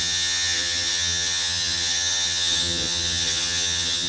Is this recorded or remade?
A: remade